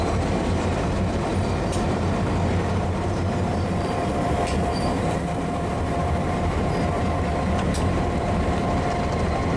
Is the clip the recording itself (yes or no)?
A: no